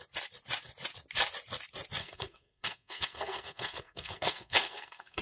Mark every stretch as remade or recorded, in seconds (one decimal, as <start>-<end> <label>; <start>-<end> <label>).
0.0-2.0 recorded; 2.0-5.2 remade